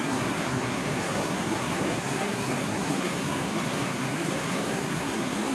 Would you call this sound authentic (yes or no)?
no